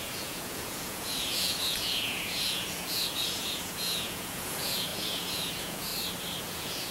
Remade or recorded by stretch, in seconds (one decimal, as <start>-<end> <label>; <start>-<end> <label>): 0.0-5.9 remade; 5.9-6.4 recorded; 6.4-6.9 remade